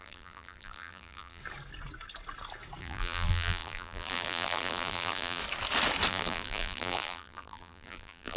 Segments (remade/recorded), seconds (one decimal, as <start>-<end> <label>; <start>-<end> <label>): 0.0-1.4 remade; 1.4-2.8 recorded; 2.8-5.4 remade; 5.4-6.1 recorded; 6.1-8.4 remade